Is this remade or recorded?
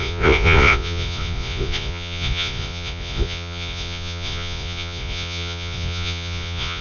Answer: remade